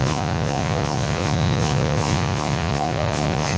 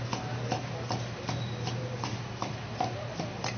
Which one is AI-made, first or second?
first